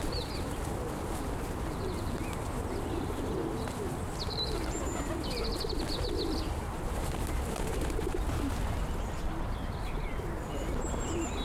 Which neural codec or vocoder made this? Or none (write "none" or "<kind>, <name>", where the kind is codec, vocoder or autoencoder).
none